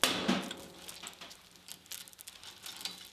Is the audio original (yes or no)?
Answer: yes